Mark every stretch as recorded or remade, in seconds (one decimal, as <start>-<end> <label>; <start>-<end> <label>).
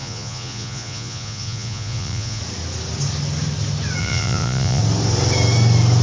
0.0-2.4 remade; 2.4-4.0 recorded; 4.0-4.8 remade; 4.8-6.0 recorded